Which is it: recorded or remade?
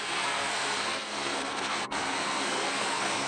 remade